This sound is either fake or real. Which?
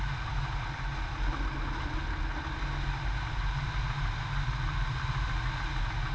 real